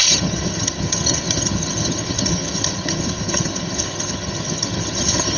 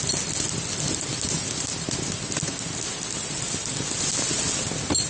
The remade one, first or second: first